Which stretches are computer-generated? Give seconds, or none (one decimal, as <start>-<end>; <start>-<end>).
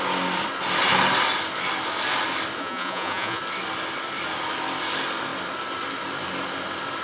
2.6-3.4